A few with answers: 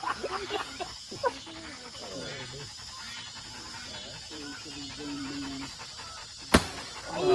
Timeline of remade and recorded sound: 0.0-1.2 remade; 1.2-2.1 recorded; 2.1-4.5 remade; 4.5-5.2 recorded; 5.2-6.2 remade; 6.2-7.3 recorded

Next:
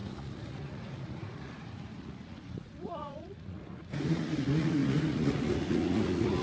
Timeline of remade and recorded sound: 0.0-6.4 remade

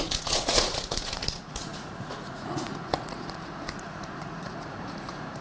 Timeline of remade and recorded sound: 0.0-5.4 remade

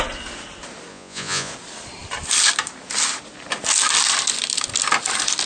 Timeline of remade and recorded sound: 0.0-0.9 recorded; 0.9-1.5 remade; 1.5-5.5 recorded

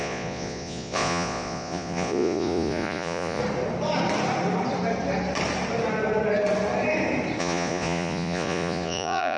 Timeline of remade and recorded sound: 0.0-3.4 remade; 3.4-7.4 recorded; 7.4-9.4 remade

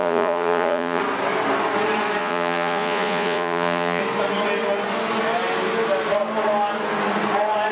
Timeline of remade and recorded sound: 0.0-1.0 remade; 1.0-2.2 recorded; 2.2-4.0 remade; 4.0-7.7 recorded

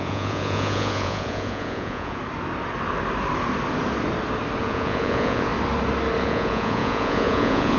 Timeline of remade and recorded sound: 0.0-2.2 remade; 2.2-4.6 recorded; 4.6-5.5 remade; 5.5-6.2 recorded; 6.2-7.8 remade

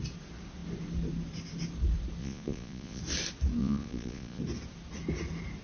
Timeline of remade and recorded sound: 0.0-2.2 recorded; 2.2-3.0 remade; 3.0-3.6 recorded; 3.6-4.4 remade; 4.4-5.6 recorded